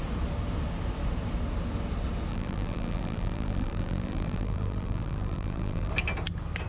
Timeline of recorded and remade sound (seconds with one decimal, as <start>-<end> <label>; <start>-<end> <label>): 0.0-2.3 recorded; 2.3-5.9 remade; 5.9-6.7 recorded